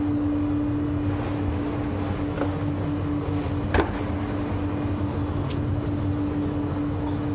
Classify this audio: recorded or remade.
recorded